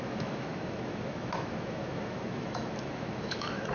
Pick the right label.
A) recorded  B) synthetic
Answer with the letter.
B